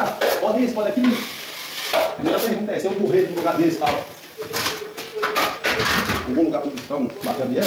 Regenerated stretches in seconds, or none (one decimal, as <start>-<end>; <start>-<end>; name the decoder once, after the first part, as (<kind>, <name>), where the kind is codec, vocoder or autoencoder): 0.0-1.0 (vocoder, BigVGAN v2); 2.8-7.7